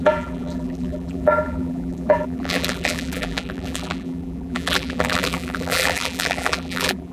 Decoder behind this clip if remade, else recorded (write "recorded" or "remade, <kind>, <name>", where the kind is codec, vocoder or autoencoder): remade, vocoder, BigVGAN v2